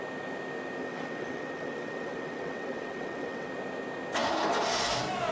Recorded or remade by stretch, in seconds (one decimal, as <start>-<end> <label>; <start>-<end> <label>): 0.0-0.8 recorded; 0.8-3.5 remade; 3.5-5.3 recorded